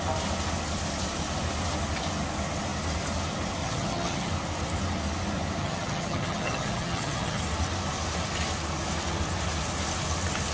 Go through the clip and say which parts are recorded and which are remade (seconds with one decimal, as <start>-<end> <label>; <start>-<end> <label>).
0.0-3.6 recorded; 3.6-4.3 remade; 4.3-5.6 recorded; 5.6-7.4 remade; 7.4-10.5 recorded